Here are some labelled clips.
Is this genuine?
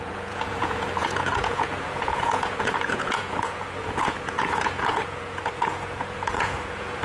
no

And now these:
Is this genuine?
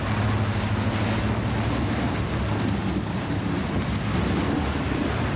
yes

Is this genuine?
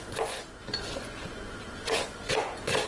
no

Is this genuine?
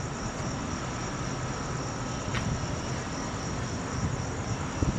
yes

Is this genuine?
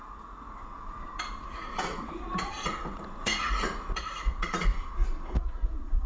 no